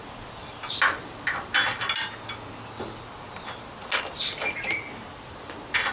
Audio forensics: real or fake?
real